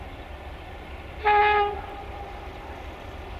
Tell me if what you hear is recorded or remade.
recorded